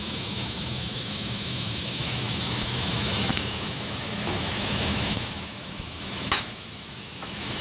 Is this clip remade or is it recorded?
remade